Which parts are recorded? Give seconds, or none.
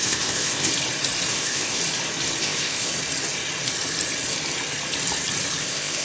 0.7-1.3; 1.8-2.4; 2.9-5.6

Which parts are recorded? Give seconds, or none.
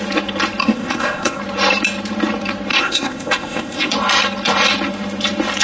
0.0-0.6; 1.4-2.7; 3.9-5.6